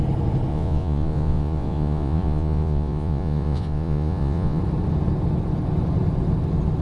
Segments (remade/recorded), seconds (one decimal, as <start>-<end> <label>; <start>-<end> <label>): 0.0-0.5 recorded; 0.5-4.6 remade; 4.6-6.8 recorded